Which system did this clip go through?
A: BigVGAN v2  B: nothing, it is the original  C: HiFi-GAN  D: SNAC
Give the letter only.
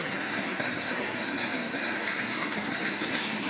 D